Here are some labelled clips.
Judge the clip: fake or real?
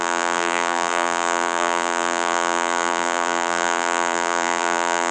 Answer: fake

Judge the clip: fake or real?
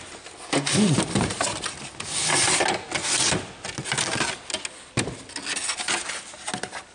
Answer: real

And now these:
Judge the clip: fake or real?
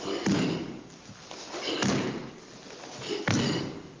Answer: real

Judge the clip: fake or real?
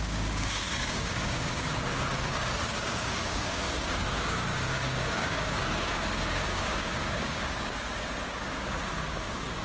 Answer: fake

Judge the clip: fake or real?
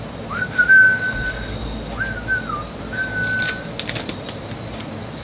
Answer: real